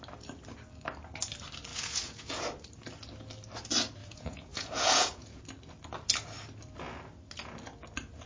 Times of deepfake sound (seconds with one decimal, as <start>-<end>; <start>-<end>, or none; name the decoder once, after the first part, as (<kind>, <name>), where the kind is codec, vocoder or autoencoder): 1.7-2.3 (vocoder, Vocos); 4.0-5.4